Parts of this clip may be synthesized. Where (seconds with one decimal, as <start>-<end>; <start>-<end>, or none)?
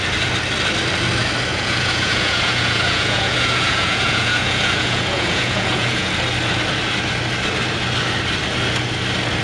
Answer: 1.5-6.1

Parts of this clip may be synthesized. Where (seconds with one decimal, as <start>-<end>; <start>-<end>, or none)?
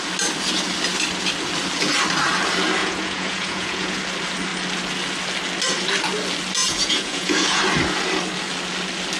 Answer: 2.8-4.0; 6.6-7.6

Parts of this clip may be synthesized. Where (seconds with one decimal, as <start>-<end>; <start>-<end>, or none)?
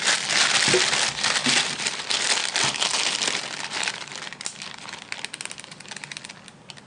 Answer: 1.4-2.0; 2.4-3.4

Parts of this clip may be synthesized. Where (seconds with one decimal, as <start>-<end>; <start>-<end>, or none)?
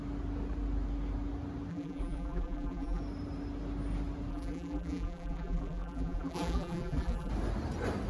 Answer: 1.7-3.0; 4.3-7.3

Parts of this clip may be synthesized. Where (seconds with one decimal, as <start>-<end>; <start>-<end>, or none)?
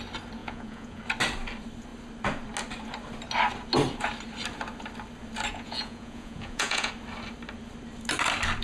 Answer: 0.4-1.0; 5.5-6.9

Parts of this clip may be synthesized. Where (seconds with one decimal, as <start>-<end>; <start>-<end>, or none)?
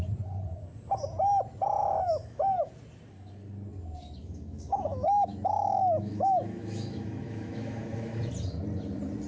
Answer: 1.8-2.7; 4.2-8.3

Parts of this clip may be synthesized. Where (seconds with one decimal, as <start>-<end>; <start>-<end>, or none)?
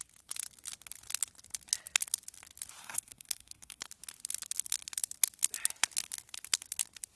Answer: 2.8-3.8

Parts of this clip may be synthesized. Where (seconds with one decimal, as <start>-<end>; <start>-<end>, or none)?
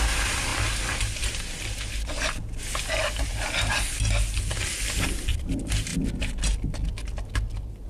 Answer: none